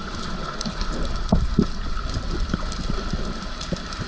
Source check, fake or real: real